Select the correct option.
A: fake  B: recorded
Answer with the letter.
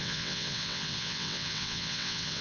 A